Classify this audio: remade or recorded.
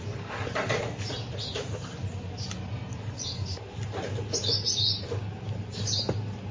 recorded